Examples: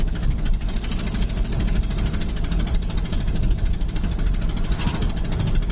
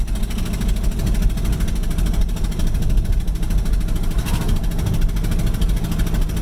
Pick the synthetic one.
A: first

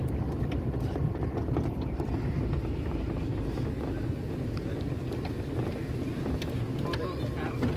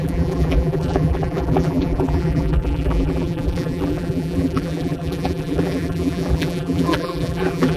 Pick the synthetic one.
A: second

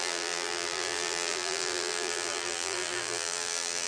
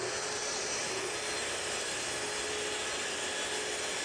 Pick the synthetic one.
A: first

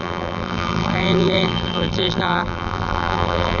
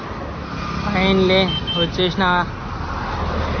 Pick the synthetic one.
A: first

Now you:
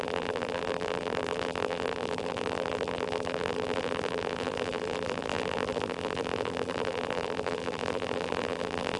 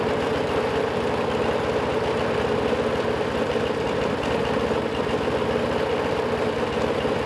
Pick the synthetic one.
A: first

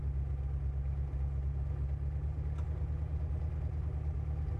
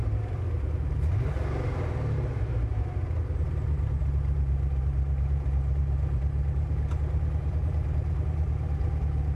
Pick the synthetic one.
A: second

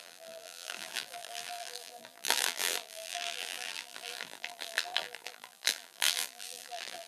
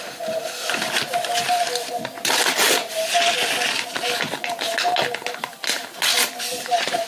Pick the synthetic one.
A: first